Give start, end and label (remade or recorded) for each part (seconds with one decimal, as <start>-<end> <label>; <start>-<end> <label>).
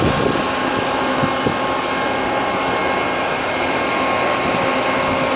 0.0-5.4 recorded